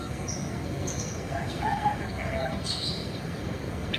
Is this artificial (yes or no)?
yes